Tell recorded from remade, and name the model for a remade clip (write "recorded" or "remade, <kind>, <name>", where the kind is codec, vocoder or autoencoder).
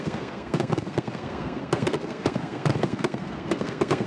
remade, codec, SNAC